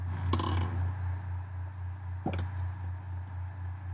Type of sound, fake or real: real